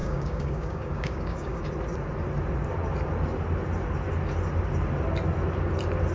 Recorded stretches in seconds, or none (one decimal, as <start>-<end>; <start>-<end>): 1.6-6.1